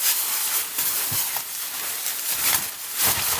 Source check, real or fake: real